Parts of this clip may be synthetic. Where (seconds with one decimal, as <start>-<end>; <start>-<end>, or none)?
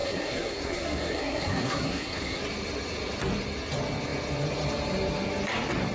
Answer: 0.0-2.4